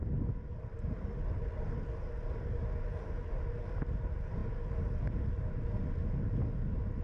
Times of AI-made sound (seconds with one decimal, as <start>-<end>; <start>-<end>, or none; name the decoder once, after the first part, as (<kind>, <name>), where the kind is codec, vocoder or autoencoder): none